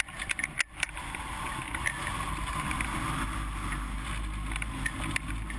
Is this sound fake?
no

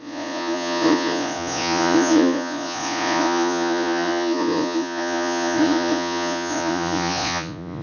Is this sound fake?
yes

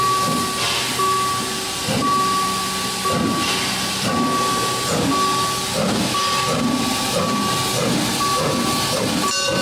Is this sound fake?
no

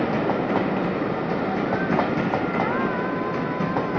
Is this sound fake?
no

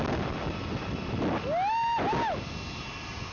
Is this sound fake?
no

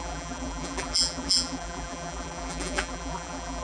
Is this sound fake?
yes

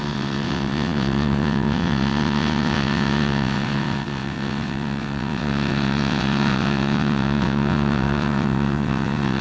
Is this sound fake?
yes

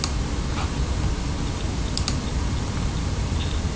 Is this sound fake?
no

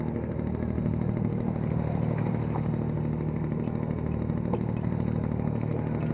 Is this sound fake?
no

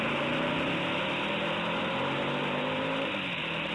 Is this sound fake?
yes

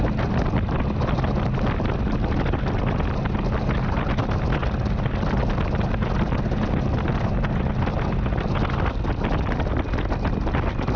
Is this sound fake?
no